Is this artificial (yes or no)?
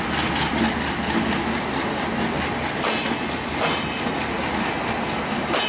no